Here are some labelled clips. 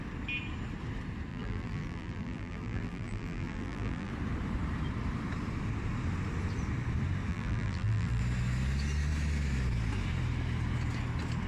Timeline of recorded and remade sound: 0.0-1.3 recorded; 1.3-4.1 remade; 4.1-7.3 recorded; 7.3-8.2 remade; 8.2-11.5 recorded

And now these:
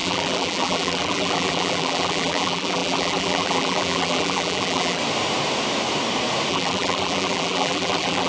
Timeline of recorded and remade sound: 0.0-5.0 remade; 5.0-6.5 recorded; 6.5-8.3 remade

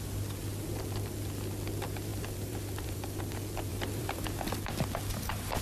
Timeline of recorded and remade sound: 0.0-2.1 recorded; 2.1-3.2 remade; 3.2-3.7 recorded; 3.7-4.5 remade; 4.5-5.6 recorded